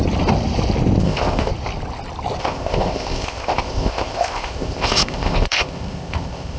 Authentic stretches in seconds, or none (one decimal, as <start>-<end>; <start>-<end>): 0.0-1.0; 1.5-2.4